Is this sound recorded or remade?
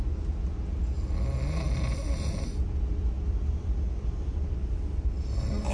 recorded